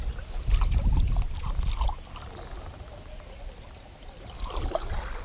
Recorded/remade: recorded